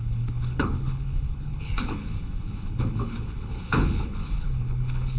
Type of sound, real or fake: fake